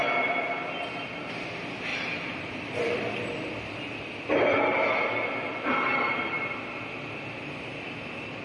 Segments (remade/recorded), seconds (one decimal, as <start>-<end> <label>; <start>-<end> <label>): 0.0-1.9 recorded; 1.9-4.6 remade; 4.6-8.4 recorded